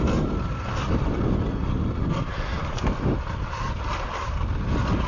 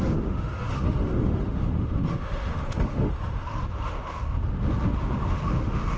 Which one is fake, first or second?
second